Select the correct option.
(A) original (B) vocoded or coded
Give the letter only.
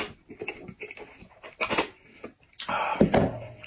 A